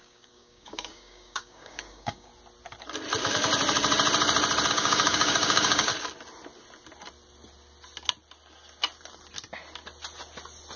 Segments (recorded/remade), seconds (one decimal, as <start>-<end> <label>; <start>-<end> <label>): 0.0-2.3 remade; 2.3-4.7 recorded; 4.7-5.9 remade; 5.9-10.8 recorded